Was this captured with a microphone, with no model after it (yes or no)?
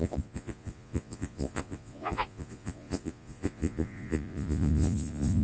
no